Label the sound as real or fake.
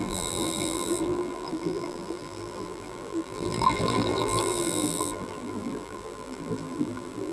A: fake